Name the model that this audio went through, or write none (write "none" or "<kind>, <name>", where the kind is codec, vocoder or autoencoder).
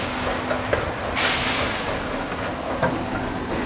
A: none